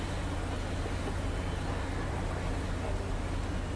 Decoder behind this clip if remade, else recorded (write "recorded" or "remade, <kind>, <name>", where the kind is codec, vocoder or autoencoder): recorded